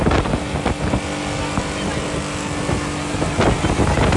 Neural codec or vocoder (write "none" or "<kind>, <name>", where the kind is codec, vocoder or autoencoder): none